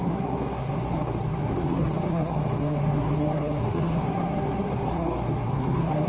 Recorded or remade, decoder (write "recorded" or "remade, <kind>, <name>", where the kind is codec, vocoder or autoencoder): remade, codec, SNAC